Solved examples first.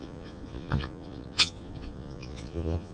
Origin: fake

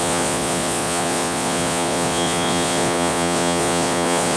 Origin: fake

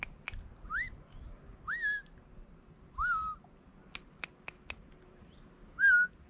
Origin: real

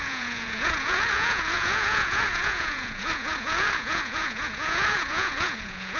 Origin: fake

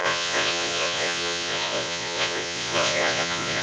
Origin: fake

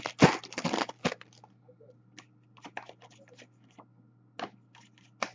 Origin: real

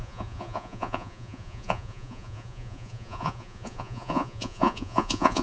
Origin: fake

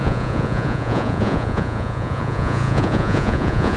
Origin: fake